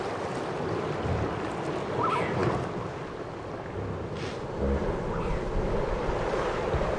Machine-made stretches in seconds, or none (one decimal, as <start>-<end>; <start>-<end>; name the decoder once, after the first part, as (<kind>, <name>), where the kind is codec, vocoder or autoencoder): none